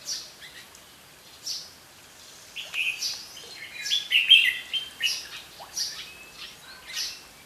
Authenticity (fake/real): real